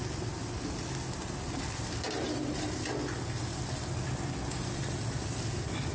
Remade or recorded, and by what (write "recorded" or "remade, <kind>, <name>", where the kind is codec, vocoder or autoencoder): recorded